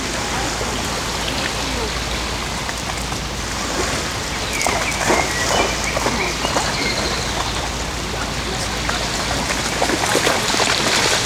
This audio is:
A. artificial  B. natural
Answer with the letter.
B